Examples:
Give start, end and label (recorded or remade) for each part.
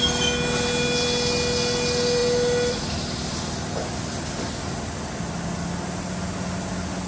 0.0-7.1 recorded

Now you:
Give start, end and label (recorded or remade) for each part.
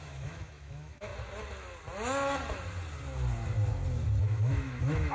0.0-1.1 remade; 1.1-4.2 recorded; 4.2-5.1 remade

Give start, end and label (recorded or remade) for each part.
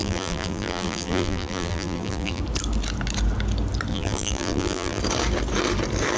0.0-2.4 remade; 2.4-3.9 recorded; 3.9-5.0 remade; 5.0-6.2 recorded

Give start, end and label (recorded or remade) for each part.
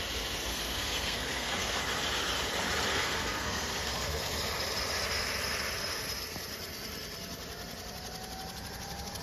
0.0-0.5 recorded; 0.5-1.8 remade; 1.8-2.9 recorded; 2.9-4.3 remade; 4.3-9.2 recorded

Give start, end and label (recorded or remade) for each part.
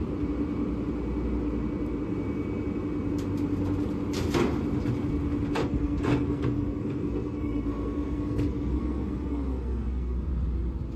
0.0-5.6 recorded; 5.6-10.3 remade; 10.3-11.0 recorded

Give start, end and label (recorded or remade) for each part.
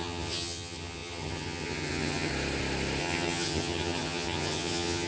0.0-2.3 remade; 2.3-3.0 recorded; 3.0-5.1 remade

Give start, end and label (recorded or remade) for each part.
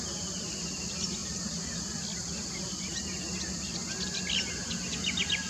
0.0-5.5 recorded